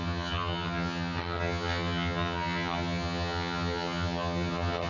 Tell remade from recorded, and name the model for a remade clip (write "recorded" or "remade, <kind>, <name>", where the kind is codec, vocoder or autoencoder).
remade, vocoder, HiFi-GAN